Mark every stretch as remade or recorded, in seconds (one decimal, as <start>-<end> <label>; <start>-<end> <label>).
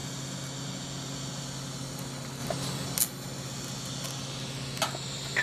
0.0-5.4 recorded